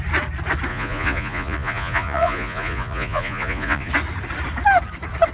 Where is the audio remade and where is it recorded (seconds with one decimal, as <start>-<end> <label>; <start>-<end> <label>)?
0.0-0.7 recorded; 0.7-3.9 remade; 3.9-5.3 recorded